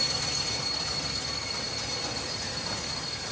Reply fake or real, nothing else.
real